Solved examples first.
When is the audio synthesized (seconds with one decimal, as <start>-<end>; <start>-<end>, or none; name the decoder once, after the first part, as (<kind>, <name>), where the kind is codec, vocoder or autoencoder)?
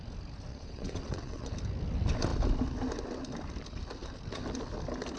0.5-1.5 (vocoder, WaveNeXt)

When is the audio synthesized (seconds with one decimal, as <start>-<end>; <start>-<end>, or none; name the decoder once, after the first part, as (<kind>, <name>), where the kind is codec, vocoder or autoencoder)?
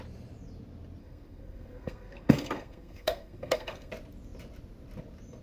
1.0-3.9 (codec, SNAC)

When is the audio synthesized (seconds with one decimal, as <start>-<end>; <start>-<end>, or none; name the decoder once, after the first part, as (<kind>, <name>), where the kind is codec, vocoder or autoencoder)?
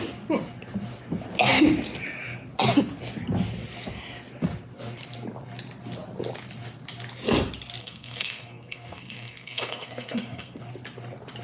7.8-10.6 (codec, SNAC)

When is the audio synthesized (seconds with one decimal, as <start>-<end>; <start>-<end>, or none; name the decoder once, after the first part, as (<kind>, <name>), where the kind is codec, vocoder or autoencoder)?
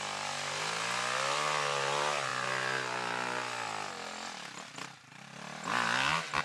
none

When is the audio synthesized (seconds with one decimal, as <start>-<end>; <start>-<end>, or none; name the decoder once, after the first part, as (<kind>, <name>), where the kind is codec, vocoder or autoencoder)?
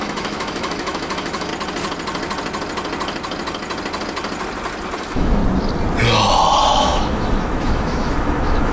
0.0-1.5 (autoencoder, DAC-VAE); 5.0-5.4; 6.8-8.7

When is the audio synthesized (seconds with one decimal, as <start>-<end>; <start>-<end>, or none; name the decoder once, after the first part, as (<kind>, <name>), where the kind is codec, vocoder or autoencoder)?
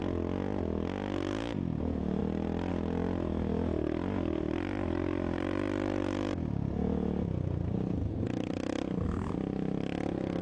none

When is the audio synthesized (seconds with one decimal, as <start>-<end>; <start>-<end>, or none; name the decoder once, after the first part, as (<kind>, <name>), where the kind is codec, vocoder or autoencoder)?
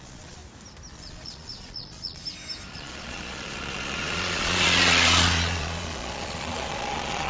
0.0-0.4 (vocoder, Vocos); 0.9-2.2; 2.7-7.3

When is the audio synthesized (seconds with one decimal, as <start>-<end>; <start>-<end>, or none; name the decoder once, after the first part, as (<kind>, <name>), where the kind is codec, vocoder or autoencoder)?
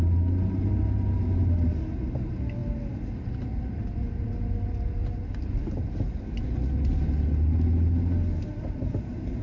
none